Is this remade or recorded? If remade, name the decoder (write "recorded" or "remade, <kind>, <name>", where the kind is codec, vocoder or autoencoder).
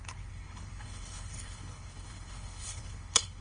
remade, codec, HILCodec